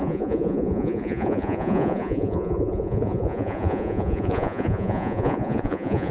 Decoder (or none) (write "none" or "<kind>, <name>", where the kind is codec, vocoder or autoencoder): vocoder, Vocos